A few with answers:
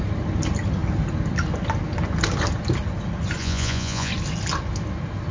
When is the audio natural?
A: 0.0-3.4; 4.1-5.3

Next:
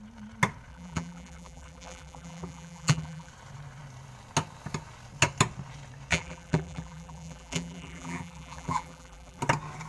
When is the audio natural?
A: 0.0-0.7; 3.3-6.1; 9.4-9.9

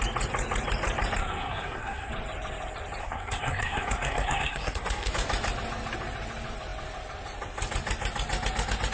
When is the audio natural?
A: 0.0-1.2; 2.1-3.0; 5.1-8.9

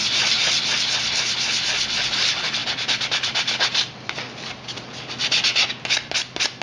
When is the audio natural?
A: 0.0-6.6

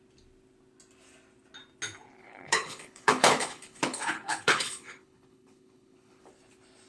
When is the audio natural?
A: 0.0-2.2; 6.3-6.9

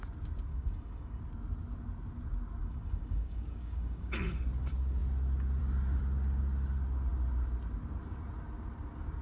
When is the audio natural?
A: 0.0-0.5; 1.2-2.6; 4.2-9.2